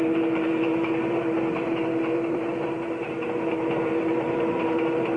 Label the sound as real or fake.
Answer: fake